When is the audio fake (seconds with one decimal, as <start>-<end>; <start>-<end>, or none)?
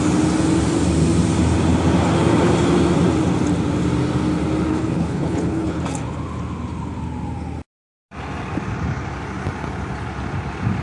4.7-5.8